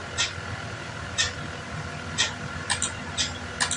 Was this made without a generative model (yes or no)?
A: yes